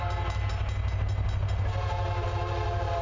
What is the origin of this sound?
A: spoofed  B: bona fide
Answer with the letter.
B